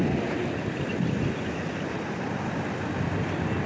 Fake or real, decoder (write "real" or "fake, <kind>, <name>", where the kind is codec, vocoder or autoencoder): real